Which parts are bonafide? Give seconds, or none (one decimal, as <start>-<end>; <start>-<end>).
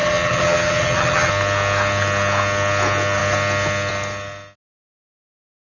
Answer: 1.3-5.8